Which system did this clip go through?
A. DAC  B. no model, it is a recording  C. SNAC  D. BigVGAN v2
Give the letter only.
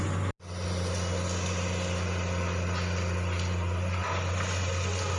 B